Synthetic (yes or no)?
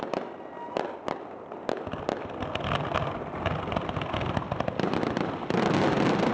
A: no